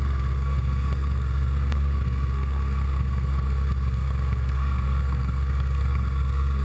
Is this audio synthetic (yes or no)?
yes